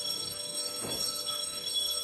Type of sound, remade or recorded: remade